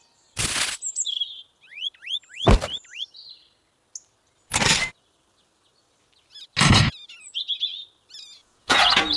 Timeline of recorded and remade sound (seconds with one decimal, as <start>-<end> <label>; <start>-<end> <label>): 0.0-8.4 recorded; 8.4-9.2 remade